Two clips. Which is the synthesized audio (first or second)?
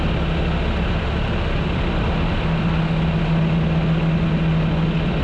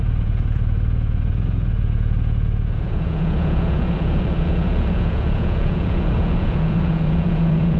second